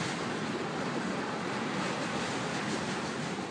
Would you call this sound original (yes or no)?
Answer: yes